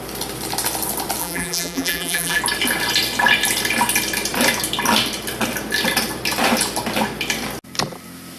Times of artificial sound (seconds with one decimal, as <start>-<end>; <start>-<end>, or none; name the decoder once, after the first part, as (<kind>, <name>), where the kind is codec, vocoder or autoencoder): 1.2-2.4 (vocoder, BigVGAN v2)